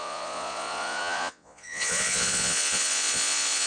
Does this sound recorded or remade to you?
remade